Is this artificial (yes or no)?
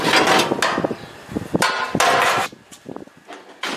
no